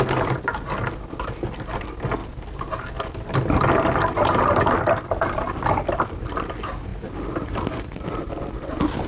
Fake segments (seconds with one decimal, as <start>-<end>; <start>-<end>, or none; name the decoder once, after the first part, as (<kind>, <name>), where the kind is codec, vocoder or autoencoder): none